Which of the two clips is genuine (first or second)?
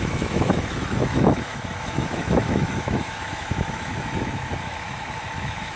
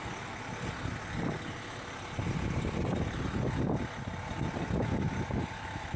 second